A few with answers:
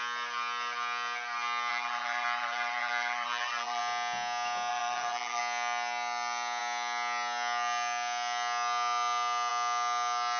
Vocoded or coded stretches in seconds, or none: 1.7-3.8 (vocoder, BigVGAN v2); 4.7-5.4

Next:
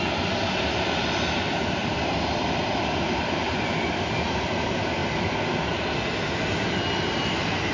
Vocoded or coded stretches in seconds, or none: 1.8-4.1 (vocoder, BigVGAN v2)

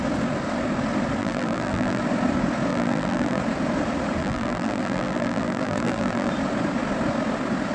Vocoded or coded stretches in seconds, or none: 1.2-2.0 (vocoder, BigVGAN v2); 2.7-3.4; 4.2-6.3